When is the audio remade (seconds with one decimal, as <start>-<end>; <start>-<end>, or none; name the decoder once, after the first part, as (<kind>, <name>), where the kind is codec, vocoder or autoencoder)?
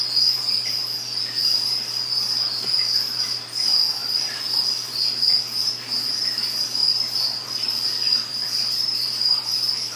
6.8-9.4 (vocoder, BigVGAN v2)